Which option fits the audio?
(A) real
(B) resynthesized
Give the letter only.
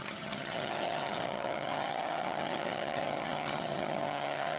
B